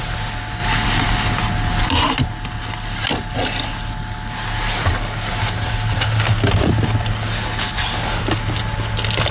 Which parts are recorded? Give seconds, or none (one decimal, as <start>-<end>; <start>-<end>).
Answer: 0.0-0.6; 1.9-9.3